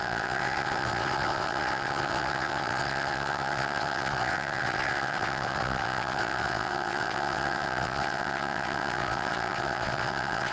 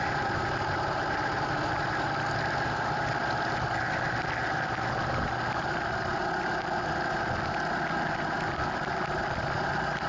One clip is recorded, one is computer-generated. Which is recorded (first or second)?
second